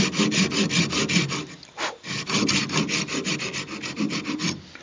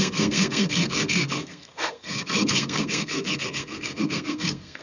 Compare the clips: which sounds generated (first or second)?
second